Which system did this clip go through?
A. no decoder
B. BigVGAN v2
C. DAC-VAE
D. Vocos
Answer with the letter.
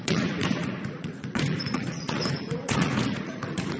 D